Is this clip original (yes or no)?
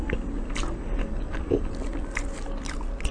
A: yes